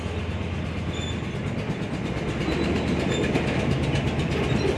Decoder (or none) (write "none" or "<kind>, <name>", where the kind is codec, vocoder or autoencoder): none